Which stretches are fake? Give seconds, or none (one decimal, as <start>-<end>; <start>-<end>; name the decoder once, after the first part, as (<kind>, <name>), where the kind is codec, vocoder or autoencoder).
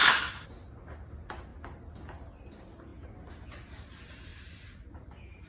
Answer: none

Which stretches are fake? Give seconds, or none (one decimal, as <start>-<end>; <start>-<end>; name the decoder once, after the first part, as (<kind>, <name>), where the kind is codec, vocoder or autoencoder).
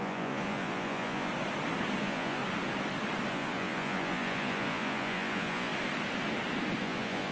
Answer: 0.0-1.3 (vocoder, Vocos); 2.0-2.4; 3.3-5.7; 6.8-7.3